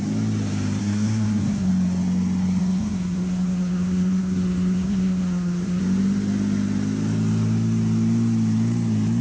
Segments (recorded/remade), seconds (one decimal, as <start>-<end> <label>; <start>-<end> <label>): 0.0-0.8 recorded; 0.8-1.7 remade; 1.7-2.6 recorded; 2.6-5.8 remade; 5.8-9.2 recorded